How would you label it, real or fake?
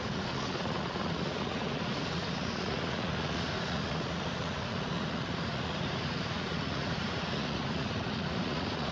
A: fake